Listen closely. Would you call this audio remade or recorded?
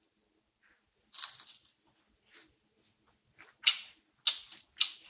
recorded